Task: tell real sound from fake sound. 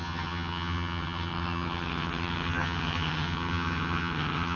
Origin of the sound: fake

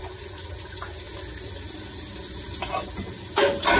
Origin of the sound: real